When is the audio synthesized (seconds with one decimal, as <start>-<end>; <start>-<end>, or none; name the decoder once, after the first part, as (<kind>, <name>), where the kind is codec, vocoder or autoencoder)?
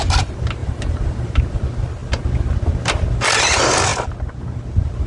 0.6-1.4 (vocoder, BigVGAN v2)